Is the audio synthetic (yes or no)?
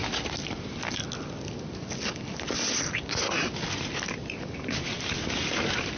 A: no